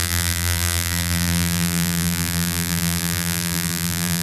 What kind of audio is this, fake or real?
fake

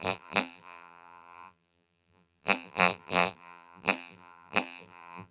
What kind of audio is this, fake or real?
fake